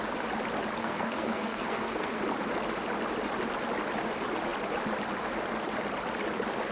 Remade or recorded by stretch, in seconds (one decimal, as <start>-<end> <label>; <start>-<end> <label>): 0.0-0.8 recorded; 0.8-2.2 remade; 2.2-6.7 recorded